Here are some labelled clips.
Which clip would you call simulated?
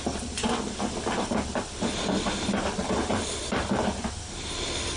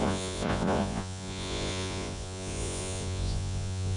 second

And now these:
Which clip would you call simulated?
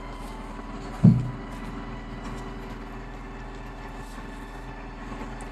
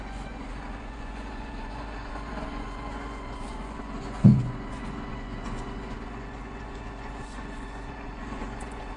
second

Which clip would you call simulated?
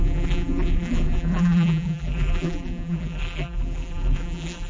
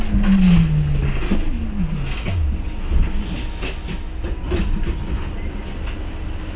first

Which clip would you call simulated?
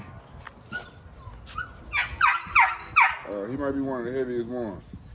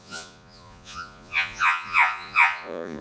second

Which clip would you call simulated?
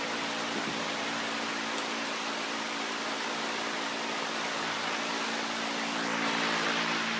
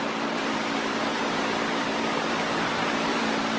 second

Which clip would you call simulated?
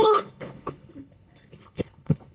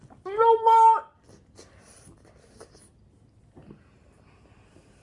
first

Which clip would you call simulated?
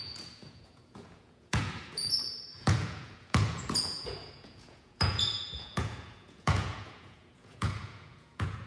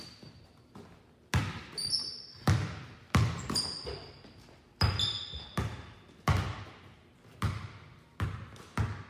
first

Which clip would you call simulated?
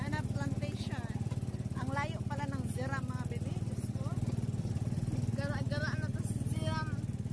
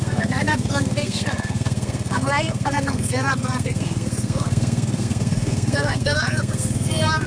second